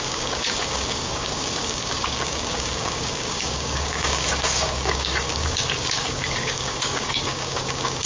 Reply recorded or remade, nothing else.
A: remade